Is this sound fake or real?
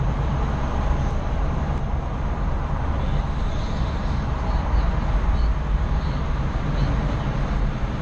fake